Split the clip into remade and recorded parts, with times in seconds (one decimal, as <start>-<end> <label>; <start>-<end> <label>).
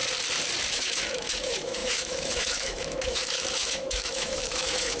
0.0-0.7 recorded; 0.7-5.0 remade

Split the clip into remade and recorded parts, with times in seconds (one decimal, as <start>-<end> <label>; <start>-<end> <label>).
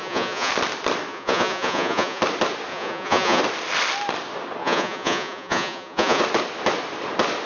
0.0-0.5 remade; 0.5-1.1 recorded; 1.1-2.2 remade; 2.2-2.7 recorded; 2.7-3.4 remade; 3.4-4.6 recorded; 4.6-6.2 remade; 6.2-7.5 recorded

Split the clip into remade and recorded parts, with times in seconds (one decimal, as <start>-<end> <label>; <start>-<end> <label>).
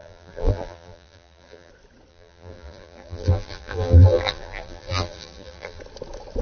0.0-1.7 remade; 1.7-2.1 recorded; 2.1-5.8 remade; 5.8-6.4 recorded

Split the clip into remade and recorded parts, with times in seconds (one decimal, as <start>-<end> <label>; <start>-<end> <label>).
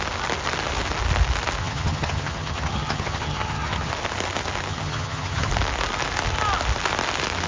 0.0-1.6 recorded; 1.6-3.9 remade; 3.9-4.7 recorded; 4.7-5.5 remade; 5.5-7.5 recorded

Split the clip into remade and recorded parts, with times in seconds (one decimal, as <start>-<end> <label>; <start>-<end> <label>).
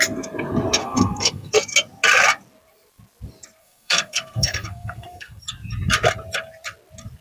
0.0-0.8 recorded; 0.8-1.5 remade; 1.5-3.6 recorded; 3.6-5.4 remade; 5.4-7.2 recorded